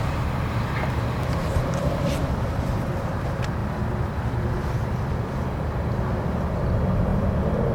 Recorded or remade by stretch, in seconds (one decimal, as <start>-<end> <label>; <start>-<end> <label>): 0.0-3.6 recorded; 3.6-5.7 remade; 5.7-7.1 recorded; 7.1-7.7 remade